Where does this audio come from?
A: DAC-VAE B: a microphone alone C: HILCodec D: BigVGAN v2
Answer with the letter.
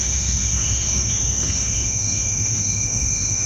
A